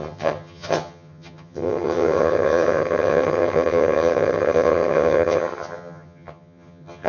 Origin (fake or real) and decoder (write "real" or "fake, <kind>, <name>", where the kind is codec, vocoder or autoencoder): fake, vocoder, HiFi-GAN